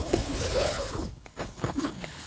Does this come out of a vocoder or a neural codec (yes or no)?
yes